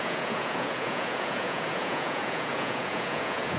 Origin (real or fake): fake